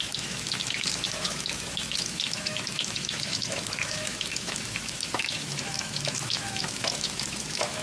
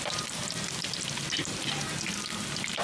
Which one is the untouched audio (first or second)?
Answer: second